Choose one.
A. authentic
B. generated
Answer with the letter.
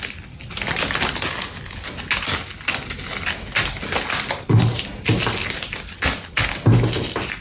A